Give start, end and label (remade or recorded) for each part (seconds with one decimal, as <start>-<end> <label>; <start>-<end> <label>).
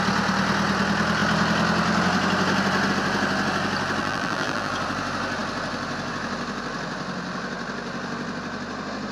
0.0-4.0 recorded; 4.0-4.7 remade; 4.7-9.1 recorded